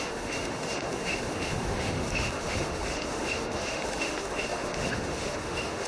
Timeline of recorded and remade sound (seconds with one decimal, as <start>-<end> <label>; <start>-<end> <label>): 0.0-5.9 remade